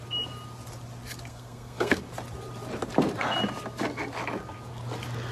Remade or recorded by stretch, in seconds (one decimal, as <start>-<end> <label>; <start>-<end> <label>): 0.0-1.3 recorded; 1.3-2.0 remade; 2.0-5.3 recorded